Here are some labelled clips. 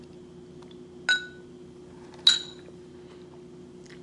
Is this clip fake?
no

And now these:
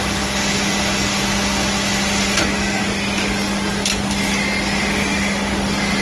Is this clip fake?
no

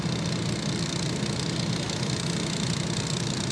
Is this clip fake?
no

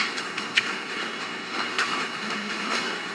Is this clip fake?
yes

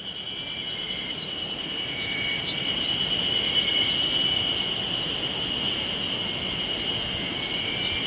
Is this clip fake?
no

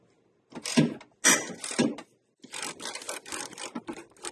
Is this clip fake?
no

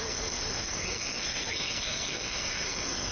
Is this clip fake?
yes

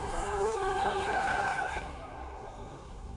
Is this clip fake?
yes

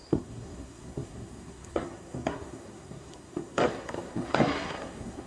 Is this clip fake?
yes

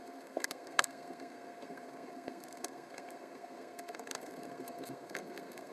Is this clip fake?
yes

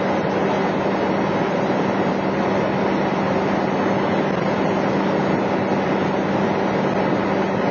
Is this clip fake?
no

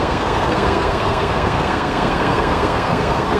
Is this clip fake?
yes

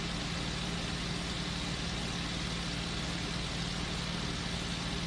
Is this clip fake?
no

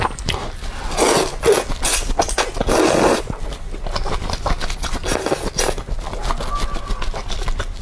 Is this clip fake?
no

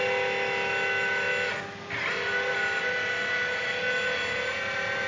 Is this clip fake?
no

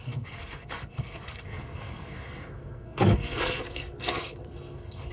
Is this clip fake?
yes